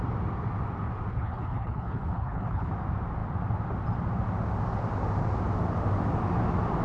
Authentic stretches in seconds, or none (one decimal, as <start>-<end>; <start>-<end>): 0.0-1.1; 2.7-6.8